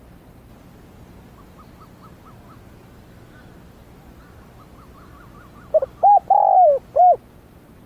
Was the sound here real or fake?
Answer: real